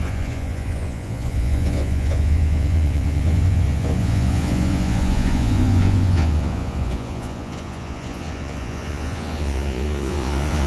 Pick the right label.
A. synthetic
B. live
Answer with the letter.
A